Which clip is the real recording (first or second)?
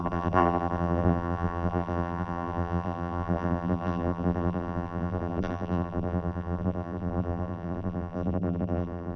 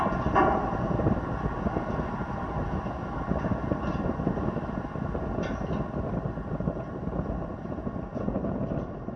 second